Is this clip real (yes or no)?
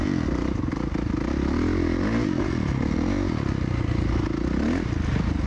yes